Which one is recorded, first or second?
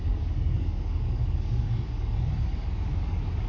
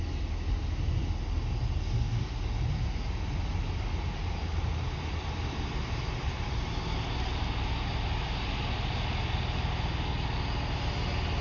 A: second